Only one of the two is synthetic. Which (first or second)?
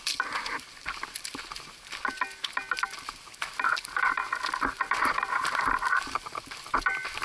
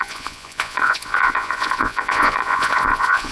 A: second